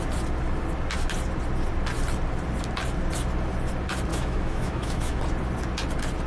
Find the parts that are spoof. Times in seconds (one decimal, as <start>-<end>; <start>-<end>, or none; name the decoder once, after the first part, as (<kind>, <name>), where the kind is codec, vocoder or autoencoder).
4.1-5.2 (autoencoder, DAC-VAE)